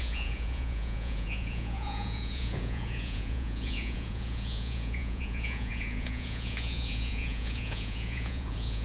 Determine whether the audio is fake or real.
fake